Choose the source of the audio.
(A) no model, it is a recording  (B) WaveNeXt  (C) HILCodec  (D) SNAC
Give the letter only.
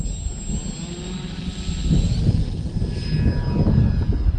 A